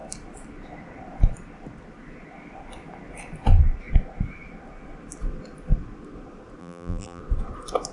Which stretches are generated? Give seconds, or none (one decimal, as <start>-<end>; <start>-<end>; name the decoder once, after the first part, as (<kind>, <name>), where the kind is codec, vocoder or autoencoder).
6.6-7.2 (vocoder, BigVGAN v2)